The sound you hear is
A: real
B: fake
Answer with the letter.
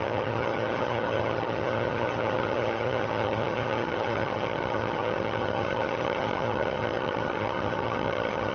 B